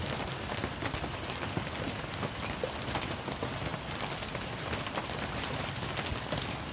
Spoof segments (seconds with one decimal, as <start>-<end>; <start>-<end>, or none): none